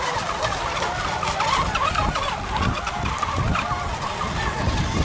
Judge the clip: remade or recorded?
recorded